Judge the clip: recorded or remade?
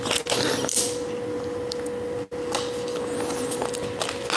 recorded